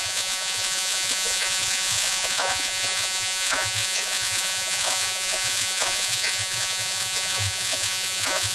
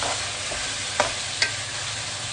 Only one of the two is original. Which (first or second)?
second